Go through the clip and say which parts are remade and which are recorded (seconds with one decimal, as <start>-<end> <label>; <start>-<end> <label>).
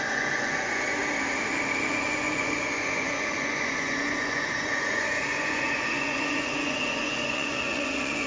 0.0-1.0 remade; 1.0-1.9 recorded; 1.9-8.3 remade